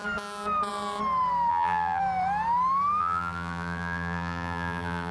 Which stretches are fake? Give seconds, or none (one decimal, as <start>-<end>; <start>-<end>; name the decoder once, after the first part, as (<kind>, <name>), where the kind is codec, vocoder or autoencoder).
1.5-2.0 (vocoder, BigVGAN v2); 3.0-5.1